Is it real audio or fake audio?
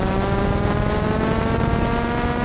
real